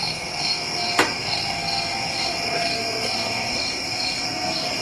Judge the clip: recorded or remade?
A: remade